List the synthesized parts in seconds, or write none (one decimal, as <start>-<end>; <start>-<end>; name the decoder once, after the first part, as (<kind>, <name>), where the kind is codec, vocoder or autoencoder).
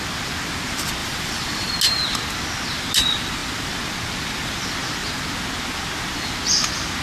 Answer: 1.0-1.7 (vocoder, BigVGAN v2)